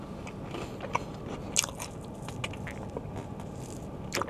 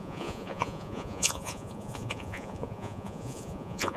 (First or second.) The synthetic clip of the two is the second